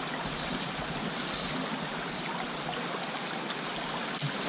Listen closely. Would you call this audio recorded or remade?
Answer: recorded